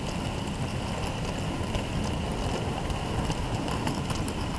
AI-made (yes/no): no